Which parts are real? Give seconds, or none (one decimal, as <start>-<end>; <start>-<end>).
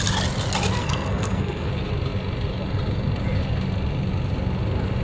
0.0-0.8; 1.7-5.0